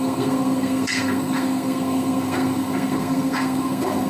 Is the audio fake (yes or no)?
yes